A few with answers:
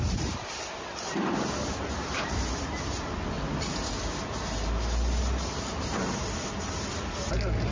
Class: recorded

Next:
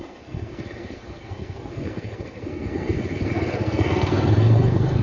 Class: remade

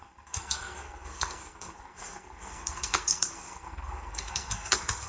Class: remade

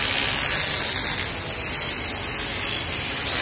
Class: recorded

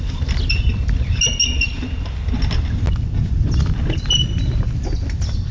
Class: recorded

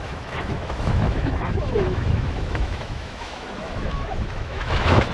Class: remade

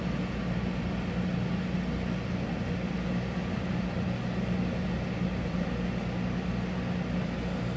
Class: recorded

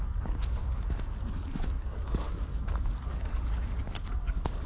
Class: remade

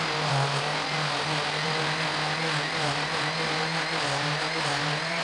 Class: recorded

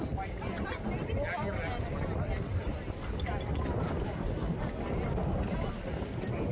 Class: recorded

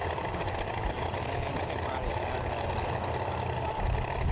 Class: recorded